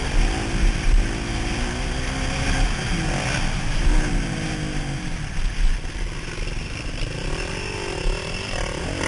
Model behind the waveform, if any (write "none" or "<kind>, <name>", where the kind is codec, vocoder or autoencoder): none